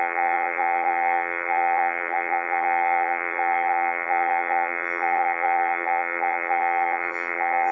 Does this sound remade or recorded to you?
remade